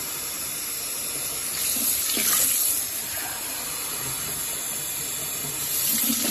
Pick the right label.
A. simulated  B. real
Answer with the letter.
B